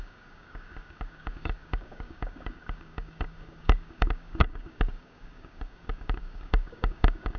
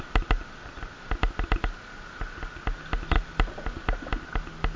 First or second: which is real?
second